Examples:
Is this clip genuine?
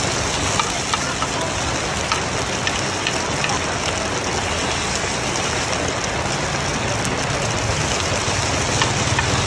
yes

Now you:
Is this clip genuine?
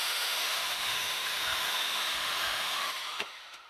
no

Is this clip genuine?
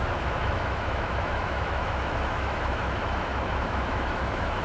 no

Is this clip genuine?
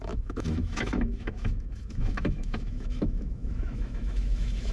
no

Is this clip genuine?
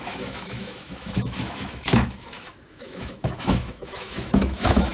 no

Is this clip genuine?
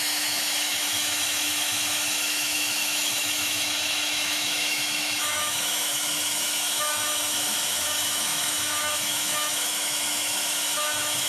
no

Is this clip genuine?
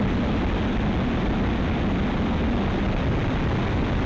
yes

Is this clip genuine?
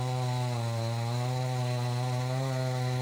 yes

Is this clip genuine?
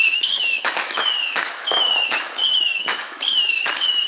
no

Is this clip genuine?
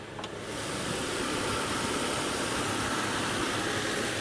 yes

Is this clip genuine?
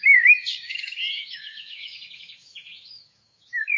no